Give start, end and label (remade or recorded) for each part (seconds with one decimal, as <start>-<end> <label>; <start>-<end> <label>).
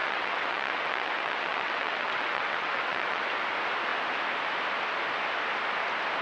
0.0-3.2 remade; 3.2-6.2 recorded